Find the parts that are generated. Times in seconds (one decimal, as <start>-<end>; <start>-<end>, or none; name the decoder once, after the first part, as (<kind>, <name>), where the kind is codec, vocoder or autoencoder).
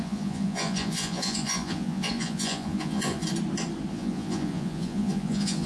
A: 0.0-3.2 (vocoder, Vocos); 3.9-5.7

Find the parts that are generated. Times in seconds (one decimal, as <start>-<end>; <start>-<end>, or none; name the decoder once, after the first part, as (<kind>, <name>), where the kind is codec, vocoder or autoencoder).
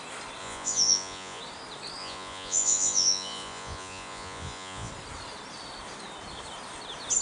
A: 0.4-1.4 (vocoder, Vocos); 2.0-4.9